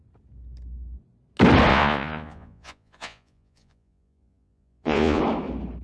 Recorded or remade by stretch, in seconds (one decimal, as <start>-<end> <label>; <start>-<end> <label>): 0.0-1.7 recorded; 1.7-5.2 remade; 5.2-5.8 recorded